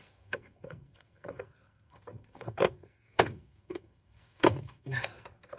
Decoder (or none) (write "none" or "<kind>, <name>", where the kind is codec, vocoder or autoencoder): codec, SNAC